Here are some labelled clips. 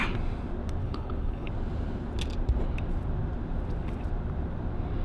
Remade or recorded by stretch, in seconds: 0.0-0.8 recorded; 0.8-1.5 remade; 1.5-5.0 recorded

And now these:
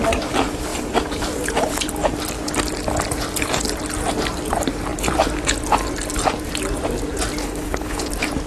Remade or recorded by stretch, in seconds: 0.0-7.4 recorded; 7.4-8.1 remade; 8.1-8.5 recorded